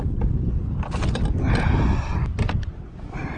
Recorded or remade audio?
recorded